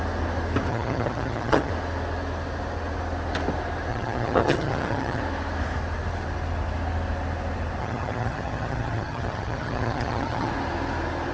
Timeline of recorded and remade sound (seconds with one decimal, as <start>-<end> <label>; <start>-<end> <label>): 0.0-0.7 recorded; 0.7-1.7 remade; 1.7-3.9 recorded; 3.9-5.2 remade; 5.2-7.8 recorded; 7.8-10.5 remade; 10.5-11.3 recorded